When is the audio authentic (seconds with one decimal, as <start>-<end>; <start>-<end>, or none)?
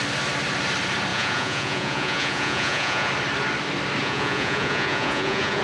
0.0-1.1; 3.1-4.0